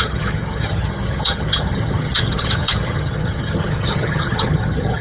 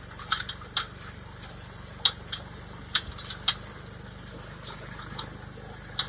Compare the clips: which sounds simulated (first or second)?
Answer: first